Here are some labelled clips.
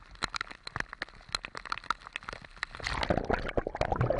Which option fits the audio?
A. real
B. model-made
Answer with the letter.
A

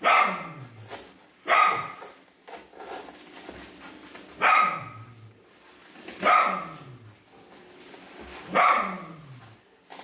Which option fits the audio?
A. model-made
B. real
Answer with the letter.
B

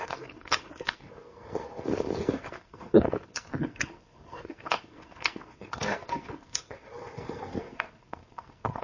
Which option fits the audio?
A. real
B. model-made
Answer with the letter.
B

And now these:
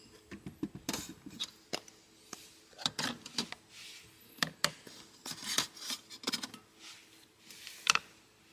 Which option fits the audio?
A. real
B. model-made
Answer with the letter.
A